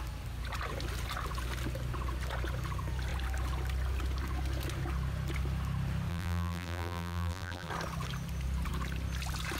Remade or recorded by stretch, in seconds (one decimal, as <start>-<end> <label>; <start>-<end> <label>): 0.0-6.1 recorded; 6.1-7.7 remade; 7.7-9.6 recorded